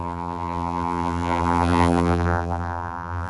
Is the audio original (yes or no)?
no